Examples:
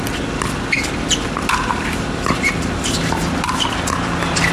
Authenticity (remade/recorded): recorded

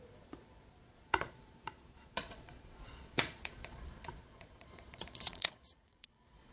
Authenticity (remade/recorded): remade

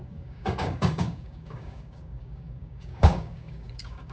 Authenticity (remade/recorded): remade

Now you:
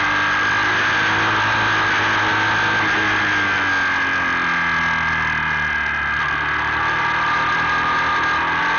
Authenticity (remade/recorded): recorded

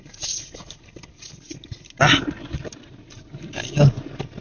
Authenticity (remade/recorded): recorded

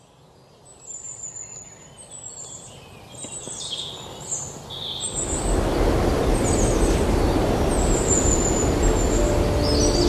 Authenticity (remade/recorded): recorded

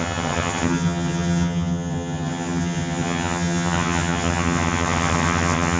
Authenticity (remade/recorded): remade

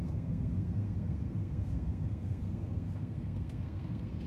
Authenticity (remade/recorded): remade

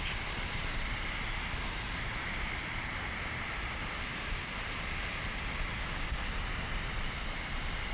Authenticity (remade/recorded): recorded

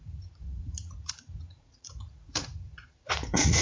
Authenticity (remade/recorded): remade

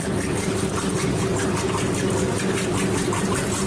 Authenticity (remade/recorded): recorded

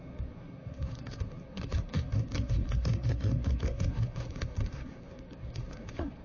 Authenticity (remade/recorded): remade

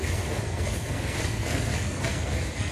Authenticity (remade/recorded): remade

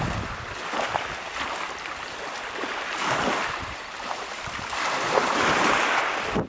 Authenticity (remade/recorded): recorded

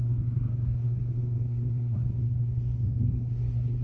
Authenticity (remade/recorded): remade